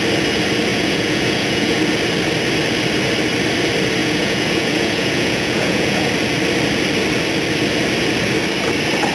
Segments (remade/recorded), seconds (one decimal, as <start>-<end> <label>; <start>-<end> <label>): 0.0-0.7 recorded; 0.7-1.8 remade; 1.8-4.0 recorded; 4.0-6.1 remade; 6.1-9.1 recorded